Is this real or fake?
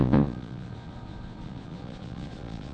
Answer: fake